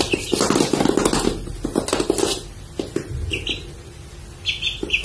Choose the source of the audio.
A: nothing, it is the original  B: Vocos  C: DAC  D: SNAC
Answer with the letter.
A